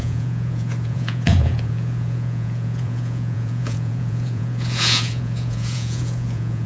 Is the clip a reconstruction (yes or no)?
yes